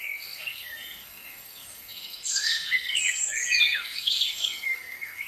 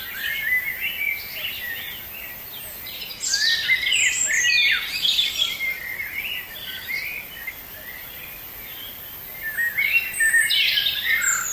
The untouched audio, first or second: second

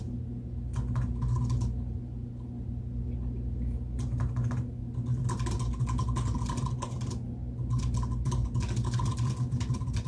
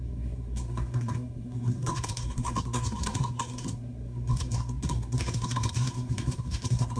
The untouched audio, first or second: first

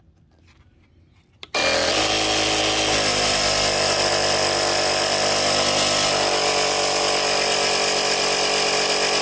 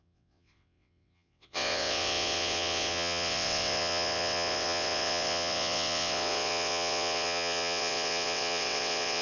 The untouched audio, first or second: first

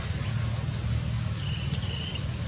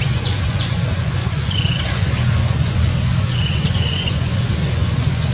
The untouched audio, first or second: first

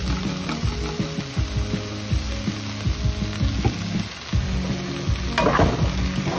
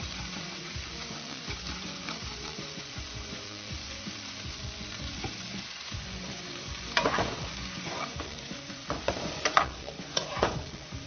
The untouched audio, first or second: first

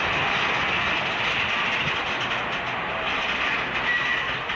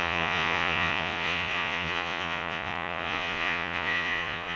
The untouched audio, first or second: first